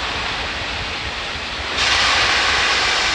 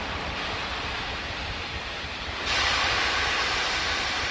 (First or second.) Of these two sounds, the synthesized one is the second